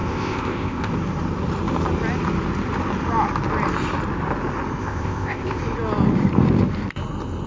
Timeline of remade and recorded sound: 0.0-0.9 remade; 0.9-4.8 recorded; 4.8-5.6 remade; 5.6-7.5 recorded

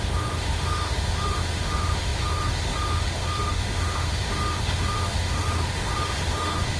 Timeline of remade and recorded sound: 0.0-6.8 remade

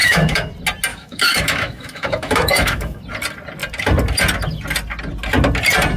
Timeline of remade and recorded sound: 0.0-0.5 remade; 0.5-0.9 recorded; 0.9-3.0 remade; 3.0-6.0 recorded

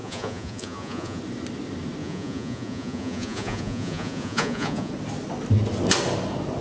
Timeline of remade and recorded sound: 0.0-1.2 remade; 1.2-2.0 recorded; 2.0-4.9 remade; 4.9-6.6 recorded

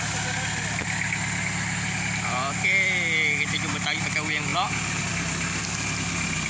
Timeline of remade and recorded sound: 0.0-6.5 recorded